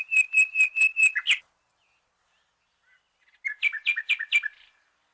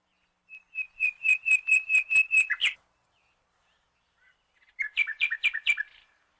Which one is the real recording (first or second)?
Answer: first